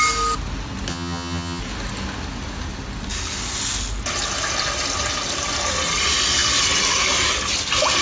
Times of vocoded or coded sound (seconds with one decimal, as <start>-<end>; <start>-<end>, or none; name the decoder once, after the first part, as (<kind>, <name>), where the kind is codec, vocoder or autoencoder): 0.9-1.6 (vocoder, HiFi-GAN)